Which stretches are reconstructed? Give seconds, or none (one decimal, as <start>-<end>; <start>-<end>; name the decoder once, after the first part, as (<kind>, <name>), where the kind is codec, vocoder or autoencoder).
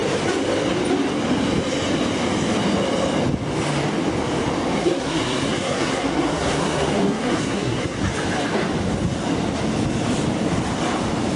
4.8-8.0 (codec, SNAC)